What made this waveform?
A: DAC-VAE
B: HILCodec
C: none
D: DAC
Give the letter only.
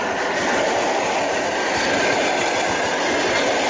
C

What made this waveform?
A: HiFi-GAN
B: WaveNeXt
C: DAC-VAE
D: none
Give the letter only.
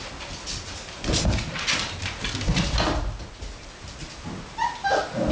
D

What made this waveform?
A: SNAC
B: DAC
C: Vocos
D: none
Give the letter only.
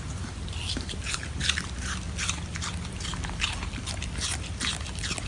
D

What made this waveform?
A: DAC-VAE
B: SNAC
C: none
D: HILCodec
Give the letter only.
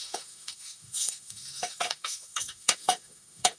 A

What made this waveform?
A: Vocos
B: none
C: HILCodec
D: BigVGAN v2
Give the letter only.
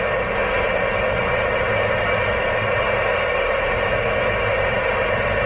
B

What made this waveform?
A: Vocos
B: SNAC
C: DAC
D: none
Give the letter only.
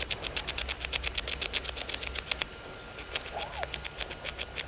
D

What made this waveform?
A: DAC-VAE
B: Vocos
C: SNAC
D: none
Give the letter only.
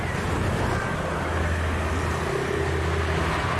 D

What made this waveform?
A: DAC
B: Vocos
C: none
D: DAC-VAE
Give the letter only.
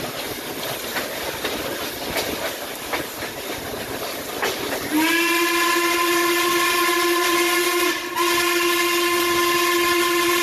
C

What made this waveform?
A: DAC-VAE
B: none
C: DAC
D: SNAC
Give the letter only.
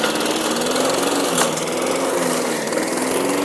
B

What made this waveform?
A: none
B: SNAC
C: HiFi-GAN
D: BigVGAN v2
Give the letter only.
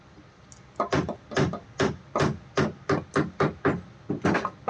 A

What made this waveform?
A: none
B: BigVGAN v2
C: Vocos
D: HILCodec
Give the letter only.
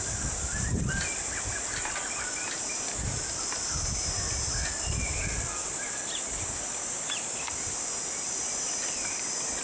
B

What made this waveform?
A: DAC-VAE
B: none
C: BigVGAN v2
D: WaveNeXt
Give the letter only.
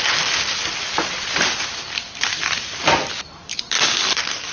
C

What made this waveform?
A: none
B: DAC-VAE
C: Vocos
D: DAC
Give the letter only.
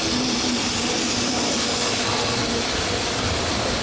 A